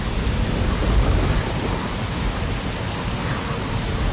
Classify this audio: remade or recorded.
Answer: recorded